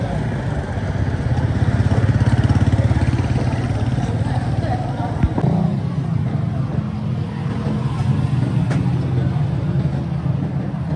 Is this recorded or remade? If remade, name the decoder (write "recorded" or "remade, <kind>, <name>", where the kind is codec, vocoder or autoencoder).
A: recorded